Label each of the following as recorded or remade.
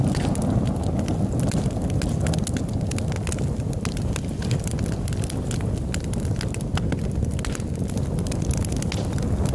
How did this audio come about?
recorded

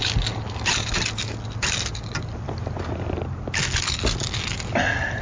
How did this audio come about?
recorded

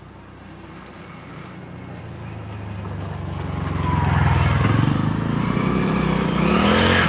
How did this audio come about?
recorded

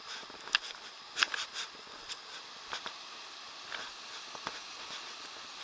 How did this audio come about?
recorded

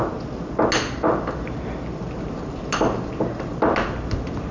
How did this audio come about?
recorded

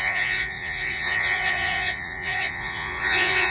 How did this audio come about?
remade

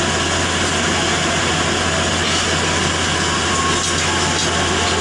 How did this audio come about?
recorded